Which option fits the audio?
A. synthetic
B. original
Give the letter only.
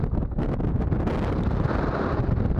B